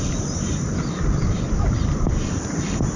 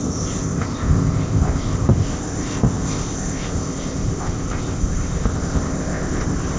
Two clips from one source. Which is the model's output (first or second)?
second